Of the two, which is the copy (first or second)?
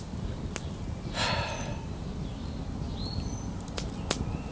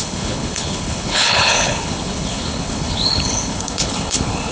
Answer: second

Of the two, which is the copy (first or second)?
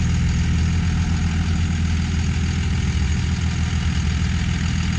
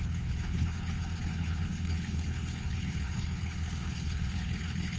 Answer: second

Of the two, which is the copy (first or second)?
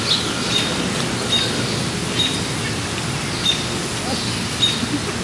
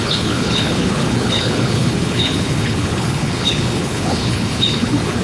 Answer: second